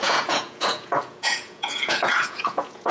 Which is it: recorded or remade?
remade